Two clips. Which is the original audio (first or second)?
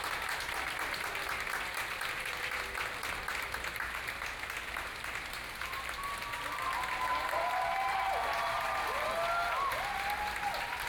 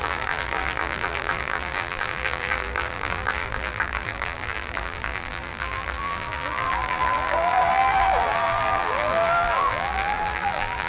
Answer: first